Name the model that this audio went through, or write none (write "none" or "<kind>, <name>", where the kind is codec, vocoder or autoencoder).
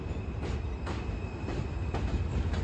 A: none